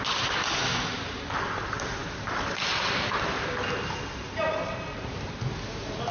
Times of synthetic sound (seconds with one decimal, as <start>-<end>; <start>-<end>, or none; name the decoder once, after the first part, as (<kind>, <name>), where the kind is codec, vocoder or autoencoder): none